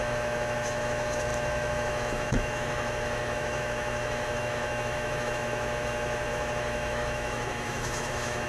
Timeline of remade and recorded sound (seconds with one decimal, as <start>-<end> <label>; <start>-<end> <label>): 0.0-8.5 remade